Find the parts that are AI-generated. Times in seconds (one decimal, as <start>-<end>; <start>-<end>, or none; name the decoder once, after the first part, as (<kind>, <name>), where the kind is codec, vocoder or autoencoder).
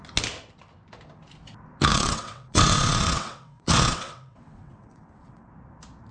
1.9-5.5 (vocoder, WaveNeXt)